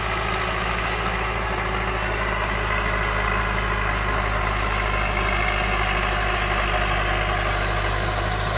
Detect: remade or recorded recorded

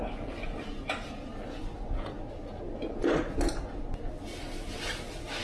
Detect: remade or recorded recorded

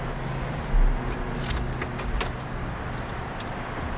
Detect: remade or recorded recorded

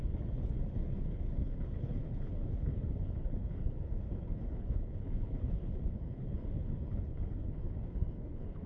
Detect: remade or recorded remade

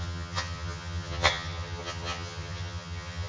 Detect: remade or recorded remade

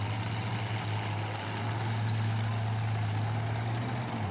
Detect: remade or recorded recorded